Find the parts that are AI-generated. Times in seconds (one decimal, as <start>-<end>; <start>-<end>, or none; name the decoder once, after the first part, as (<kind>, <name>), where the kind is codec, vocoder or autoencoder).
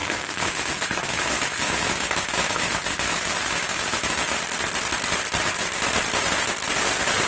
0.0-4.4 (autoencoder, DAC-VAE)